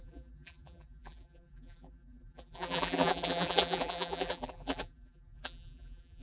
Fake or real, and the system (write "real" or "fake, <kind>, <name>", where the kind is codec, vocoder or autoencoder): fake, vocoder, BigVGAN v2